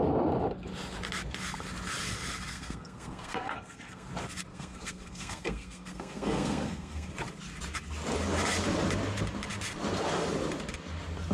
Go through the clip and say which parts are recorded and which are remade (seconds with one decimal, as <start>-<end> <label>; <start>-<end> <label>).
0.0-2.5 recorded; 2.5-4.1 remade; 4.1-4.5 recorded; 4.5-7.1 remade; 7.1-11.3 recorded